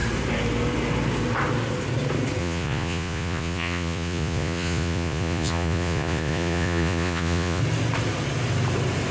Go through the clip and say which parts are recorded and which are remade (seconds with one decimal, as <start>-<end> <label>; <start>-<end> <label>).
0.0-2.4 recorded; 2.4-7.6 remade; 7.6-9.1 recorded

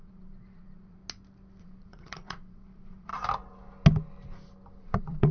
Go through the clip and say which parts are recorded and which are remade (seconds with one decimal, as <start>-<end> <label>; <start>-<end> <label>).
0.0-1.0 remade; 1.0-1.6 recorded; 1.6-3.1 remade; 3.1-4.8 recorded; 4.8-5.3 remade